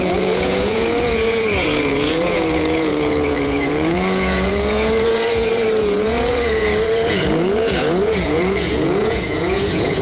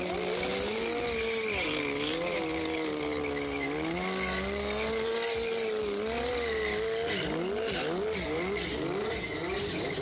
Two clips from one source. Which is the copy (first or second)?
first